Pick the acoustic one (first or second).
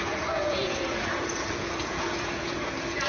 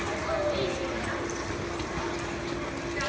second